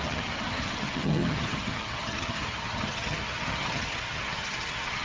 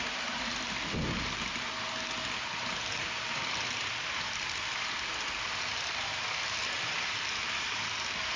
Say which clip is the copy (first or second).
first